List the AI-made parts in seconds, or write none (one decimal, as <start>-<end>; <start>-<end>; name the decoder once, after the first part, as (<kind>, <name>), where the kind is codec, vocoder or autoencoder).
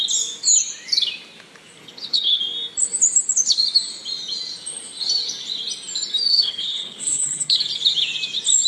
1.8-2.4 (codec, HILCodec); 6.3-7.6